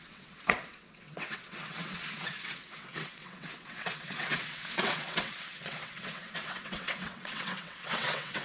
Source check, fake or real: fake